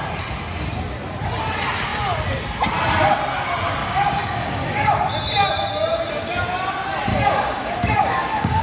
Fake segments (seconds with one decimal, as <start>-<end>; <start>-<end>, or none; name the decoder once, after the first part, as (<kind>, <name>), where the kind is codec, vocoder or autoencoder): 3.8-5.0 (codec, DAC); 7.1-8.6